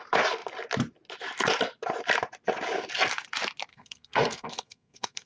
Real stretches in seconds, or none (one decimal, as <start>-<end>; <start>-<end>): 0.0-3.7